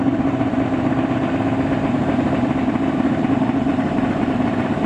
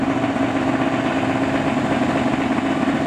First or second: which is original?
second